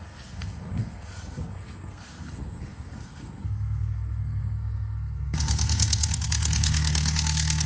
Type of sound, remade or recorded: remade